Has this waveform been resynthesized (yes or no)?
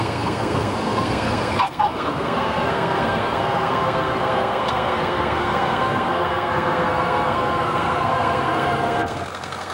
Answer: yes